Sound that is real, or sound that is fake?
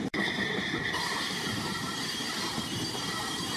fake